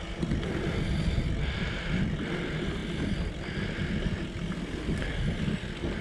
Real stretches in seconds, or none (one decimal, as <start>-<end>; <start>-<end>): 0.0-6.0